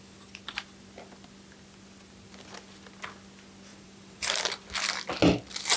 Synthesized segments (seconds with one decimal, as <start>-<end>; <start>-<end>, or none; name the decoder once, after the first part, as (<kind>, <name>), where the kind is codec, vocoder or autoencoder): 3.7-4.4 (vocoder, BigVGAN v2)